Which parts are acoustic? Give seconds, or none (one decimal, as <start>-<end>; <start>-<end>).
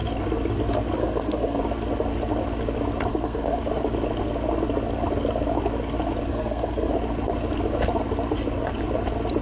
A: 0.0-1.0; 1.6-3.1; 3.6-6.3; 6.9-9.4